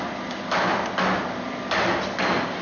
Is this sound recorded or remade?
recorded